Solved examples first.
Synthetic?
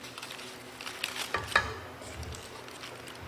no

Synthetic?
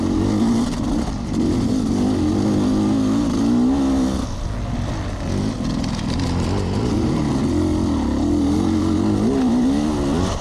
no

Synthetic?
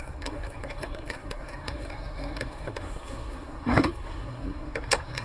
yes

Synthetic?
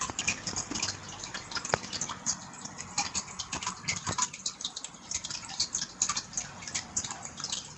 no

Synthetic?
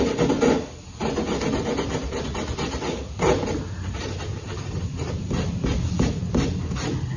no